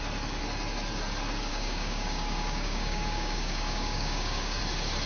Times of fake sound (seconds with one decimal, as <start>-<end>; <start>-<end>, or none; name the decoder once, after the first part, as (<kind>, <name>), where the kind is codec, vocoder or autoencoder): 1.5-4.6 (codec, DAC)